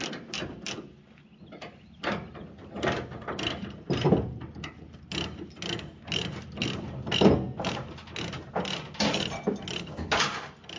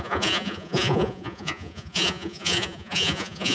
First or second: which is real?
first